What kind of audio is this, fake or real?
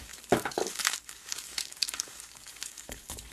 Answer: fake